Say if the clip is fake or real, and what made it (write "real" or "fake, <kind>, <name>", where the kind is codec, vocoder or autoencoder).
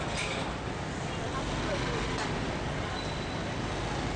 real